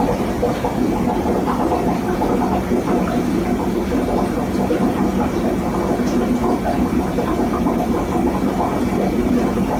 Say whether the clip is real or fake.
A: real